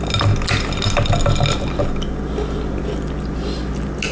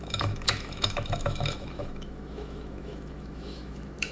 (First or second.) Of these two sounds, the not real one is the second